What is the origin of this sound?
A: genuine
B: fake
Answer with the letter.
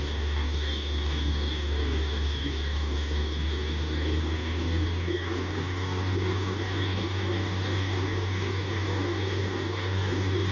B